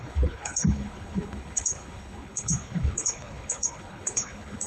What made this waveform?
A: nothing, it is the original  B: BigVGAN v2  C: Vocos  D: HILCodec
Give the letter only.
D